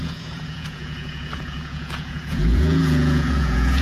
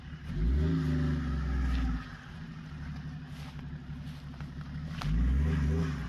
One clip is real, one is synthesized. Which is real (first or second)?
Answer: second